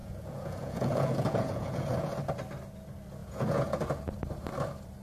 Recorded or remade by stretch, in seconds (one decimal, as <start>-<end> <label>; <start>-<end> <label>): 0.0-2.1 remade; 2.1-3.2 recorded; 3.2-3.9 remade; 3.9-5.0 recorded